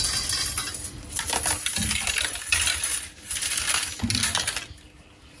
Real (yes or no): yes